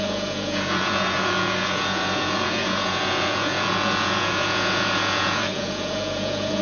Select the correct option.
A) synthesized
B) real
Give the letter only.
A